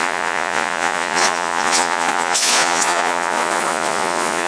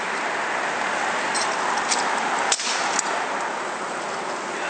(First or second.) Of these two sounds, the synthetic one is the first